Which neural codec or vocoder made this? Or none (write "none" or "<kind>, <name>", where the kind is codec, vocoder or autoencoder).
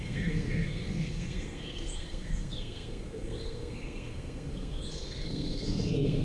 codec, SNAC